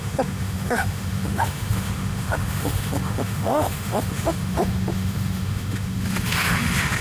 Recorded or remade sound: remade